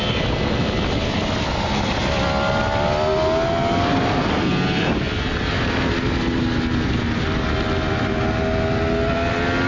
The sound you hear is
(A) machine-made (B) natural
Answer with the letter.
B